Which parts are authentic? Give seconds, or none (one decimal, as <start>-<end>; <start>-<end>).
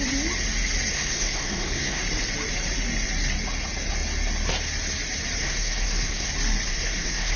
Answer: 0.0-0.9; 2.0-5.4; 6.3-6.7